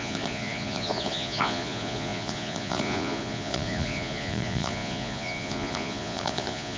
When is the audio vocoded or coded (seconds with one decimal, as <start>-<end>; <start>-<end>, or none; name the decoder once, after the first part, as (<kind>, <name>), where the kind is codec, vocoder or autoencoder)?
0.0-6.8 (vocoder, Vocos)